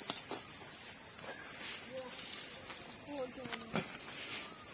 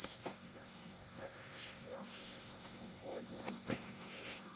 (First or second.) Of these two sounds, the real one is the first